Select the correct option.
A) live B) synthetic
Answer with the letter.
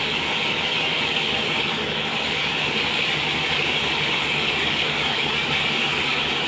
B